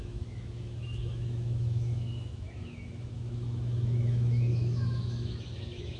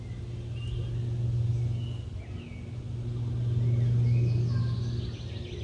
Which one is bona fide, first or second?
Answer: second